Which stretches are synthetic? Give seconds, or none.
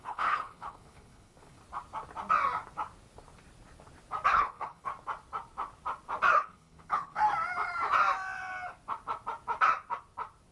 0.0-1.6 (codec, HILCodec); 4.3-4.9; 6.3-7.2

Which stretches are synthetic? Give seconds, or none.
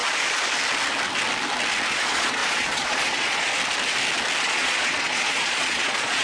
1.9-3.5 (vocoder, Vocos); 4.4-6.2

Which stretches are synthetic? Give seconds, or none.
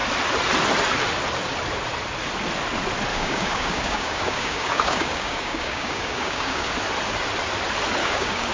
3.1-6.7 (codec, DAC); 8.0-8.5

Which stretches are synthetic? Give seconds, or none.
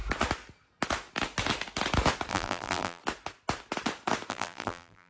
2.3-3.0 (vocoder, BigVGAN v2); 4.3-5.1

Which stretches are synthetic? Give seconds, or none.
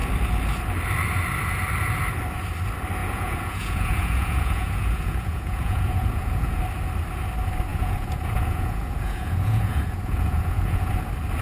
3.0-6.6 (vocoder, Vocos); 7.7-10.9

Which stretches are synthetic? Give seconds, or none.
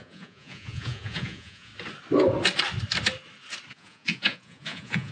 0.0-1.7 (vocoder, Vocos); 3.7-5.1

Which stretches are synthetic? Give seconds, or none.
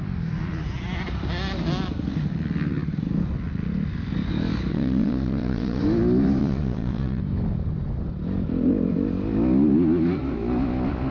4.7-5.8 (vocoder, Vocos); 6.4-7.2